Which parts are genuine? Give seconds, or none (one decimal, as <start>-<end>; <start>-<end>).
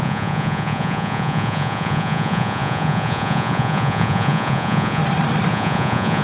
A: 5.0-5.5